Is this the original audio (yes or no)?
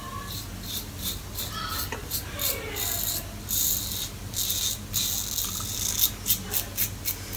yes